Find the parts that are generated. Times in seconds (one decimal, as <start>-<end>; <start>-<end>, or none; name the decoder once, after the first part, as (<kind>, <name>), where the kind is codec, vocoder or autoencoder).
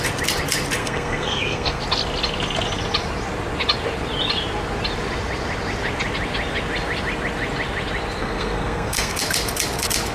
0.8-1.8 (codec, SNAC); 8.2-9.2